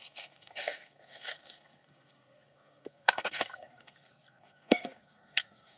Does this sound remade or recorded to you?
remade